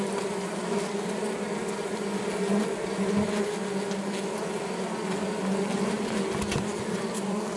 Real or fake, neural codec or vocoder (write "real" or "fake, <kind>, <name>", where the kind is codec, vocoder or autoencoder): real